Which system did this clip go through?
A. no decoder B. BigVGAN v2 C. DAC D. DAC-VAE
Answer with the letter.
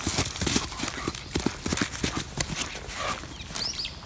A